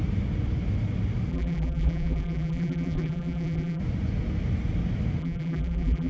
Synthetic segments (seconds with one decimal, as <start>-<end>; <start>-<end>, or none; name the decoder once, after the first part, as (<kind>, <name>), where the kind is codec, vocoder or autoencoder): 1.3-3.8 (vocoder, BigVGAN v2); 5.2-6.1